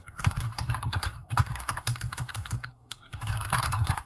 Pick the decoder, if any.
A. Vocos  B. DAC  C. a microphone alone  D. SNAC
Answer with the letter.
D